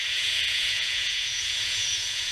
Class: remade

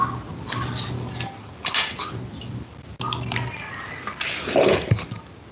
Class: recorded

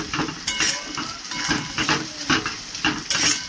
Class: recorded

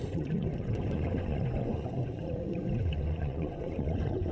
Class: remade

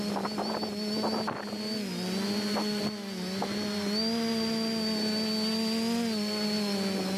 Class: recorded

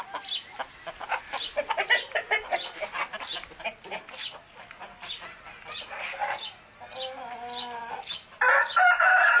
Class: recorded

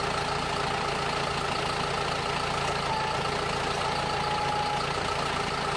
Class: recorded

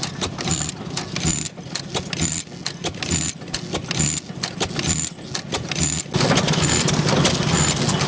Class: recorded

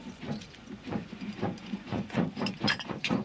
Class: remade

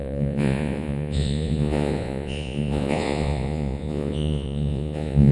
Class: remade